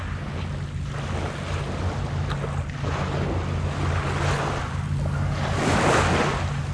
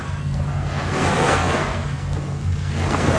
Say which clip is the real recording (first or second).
first